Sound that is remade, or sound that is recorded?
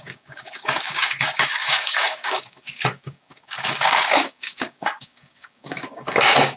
remade